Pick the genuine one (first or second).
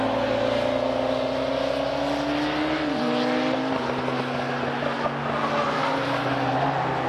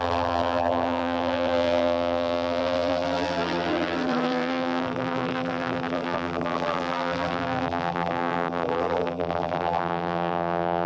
first